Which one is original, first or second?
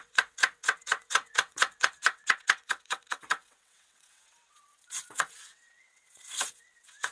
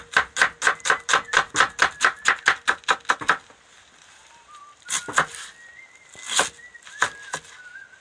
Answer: second